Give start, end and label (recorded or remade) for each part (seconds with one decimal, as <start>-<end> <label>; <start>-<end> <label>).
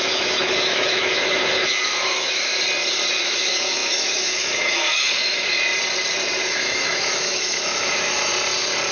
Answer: 0.0-2.5 remade; 2.5-3.1 recorded; 3.1-5.7 remade; 5.7-6.4 recorded; 6.4-8.3 remade; 8.3-8.9 recorded